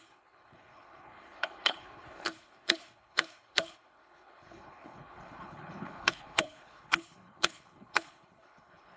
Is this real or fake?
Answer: fake